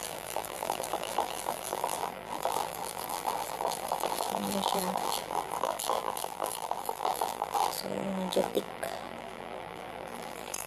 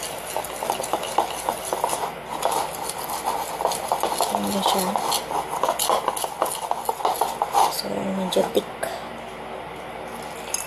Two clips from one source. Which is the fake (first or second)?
first